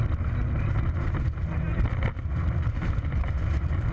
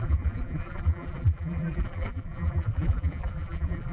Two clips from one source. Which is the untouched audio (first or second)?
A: first